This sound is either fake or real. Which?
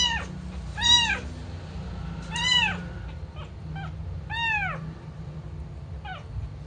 real